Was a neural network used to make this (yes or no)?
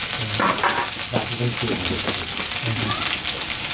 no